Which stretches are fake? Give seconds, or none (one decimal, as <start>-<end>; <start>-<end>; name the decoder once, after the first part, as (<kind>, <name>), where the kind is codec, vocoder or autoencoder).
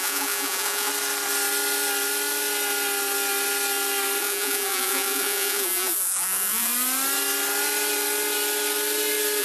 0.0-0.9 (vocoder, Vocos); 4.2-6.7